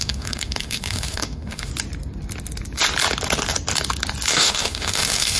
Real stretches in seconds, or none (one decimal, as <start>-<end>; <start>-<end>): 1.7-4.3